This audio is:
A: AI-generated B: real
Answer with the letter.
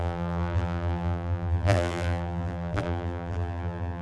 A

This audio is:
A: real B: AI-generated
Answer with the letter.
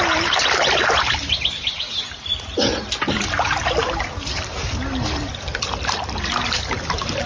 A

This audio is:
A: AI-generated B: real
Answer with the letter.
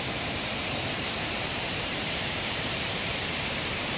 A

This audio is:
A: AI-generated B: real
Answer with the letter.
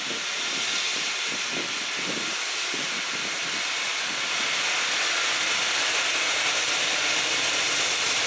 B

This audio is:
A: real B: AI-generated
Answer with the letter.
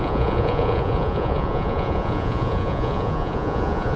B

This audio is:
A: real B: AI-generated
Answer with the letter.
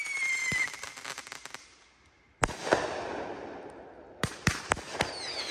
A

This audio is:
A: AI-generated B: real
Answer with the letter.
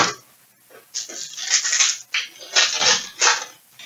B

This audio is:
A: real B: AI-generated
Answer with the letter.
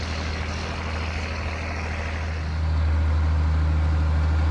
A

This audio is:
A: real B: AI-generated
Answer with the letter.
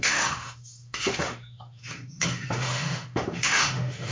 B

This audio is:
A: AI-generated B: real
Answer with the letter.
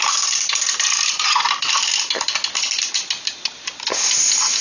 B